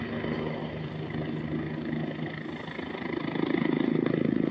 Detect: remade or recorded recorded